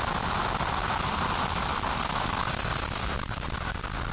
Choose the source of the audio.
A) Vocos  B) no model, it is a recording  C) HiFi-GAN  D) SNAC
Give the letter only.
B